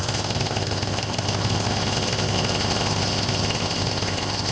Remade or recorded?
remade